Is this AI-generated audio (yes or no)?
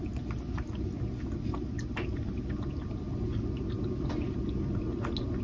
no